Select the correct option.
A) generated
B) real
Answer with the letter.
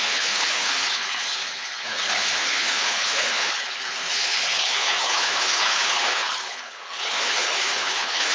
A